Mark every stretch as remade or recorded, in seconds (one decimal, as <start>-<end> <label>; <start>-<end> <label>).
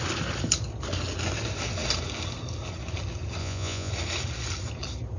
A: 0.0-3.4 recorded; 3.4-3.9 remade; 3.9-5.2 recorded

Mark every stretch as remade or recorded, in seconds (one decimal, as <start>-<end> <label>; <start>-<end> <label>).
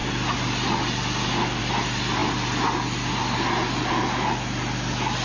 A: 0.0-5.2 recorded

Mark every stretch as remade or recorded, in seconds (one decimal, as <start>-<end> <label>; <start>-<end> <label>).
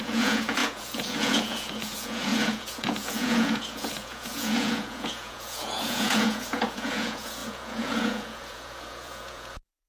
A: 0.0-9.9 remade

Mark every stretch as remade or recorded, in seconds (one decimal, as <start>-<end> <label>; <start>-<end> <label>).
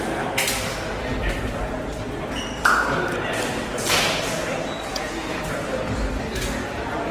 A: 0.0-4.9 recorded; 4.9-5.4 remade; 5.4-7.1 recorded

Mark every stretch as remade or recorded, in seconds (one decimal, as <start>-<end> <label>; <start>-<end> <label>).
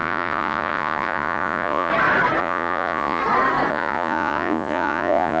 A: 0.0-1.9 remade; 1.9-2.4 recorded; 2.4-3.2 remade; 3.2-3.7 recorded; 3.7-5.4 remade